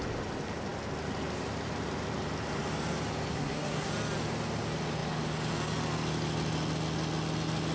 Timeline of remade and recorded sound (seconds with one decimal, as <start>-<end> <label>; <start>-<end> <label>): 0.0-3.3 recorded; 3.3-3.9 remade; 3.9-7.7 recorded